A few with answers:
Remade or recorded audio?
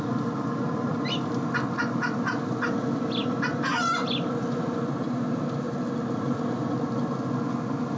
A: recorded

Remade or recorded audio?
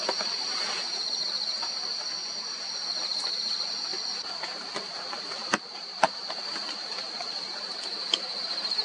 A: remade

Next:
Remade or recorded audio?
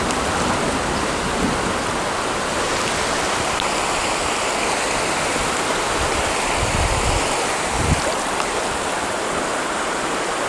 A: recorded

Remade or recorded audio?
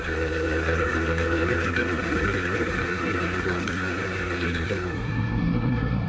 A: remade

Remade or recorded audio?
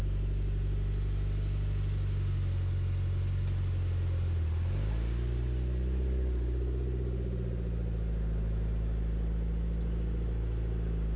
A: recorded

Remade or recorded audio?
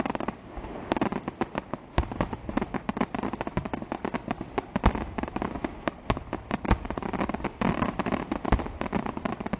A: recorded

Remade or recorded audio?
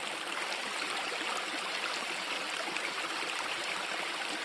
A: recorded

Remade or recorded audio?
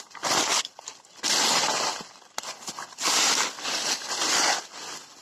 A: recorded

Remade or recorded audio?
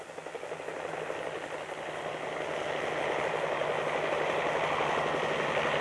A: recorded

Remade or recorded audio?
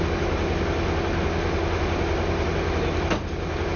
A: recorded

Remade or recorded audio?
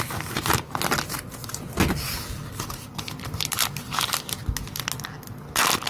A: recorded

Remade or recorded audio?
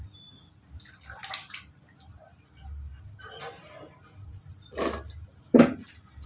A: recorded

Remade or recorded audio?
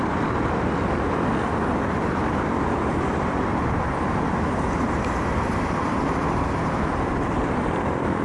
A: remade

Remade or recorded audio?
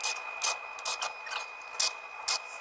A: recorded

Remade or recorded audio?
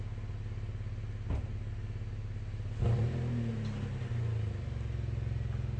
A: recorded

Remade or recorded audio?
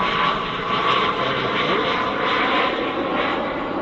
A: recorded